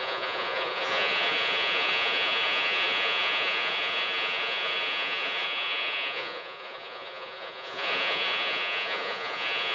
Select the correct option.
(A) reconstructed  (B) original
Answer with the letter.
A